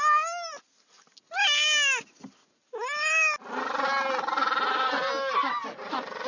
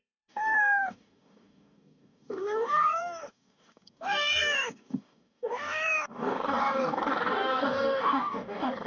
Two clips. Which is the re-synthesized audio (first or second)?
second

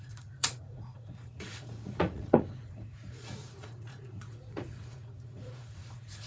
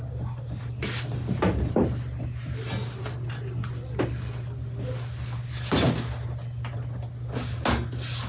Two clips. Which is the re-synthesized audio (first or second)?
first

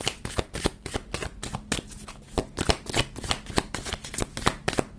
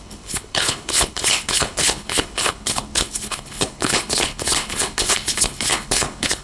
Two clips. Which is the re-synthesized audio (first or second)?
second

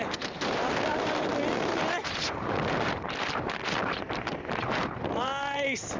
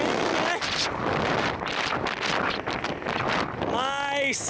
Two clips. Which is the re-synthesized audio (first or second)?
first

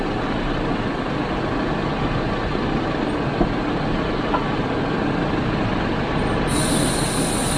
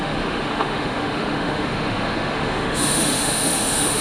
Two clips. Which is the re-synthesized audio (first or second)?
second